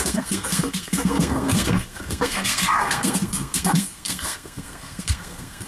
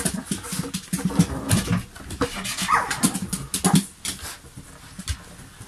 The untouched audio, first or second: second